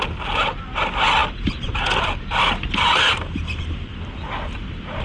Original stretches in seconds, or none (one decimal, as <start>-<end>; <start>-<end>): 0.0-5.0